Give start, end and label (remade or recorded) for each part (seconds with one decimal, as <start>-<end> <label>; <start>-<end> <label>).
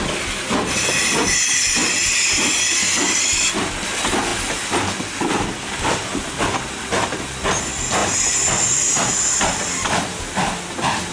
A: 0.0-1.8 recorded; 1.8-3.6 remade; 3.6-8.0 recorded; 8.0-9.1 remade; 9.1-11.1 recorded